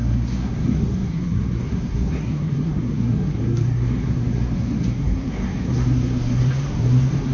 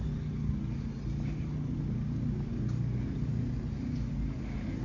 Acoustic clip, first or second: second